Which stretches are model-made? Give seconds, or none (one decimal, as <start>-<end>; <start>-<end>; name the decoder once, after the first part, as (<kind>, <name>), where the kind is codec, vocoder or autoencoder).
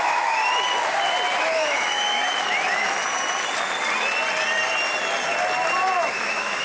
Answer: 0.0-0.4 (autoencoder, DAC-VAE); 1.4-2.2; 6.0-6.6